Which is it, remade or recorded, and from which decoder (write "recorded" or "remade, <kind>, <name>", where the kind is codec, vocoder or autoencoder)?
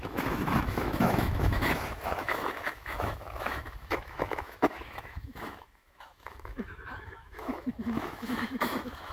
remade, autoencoder, DAC-VAE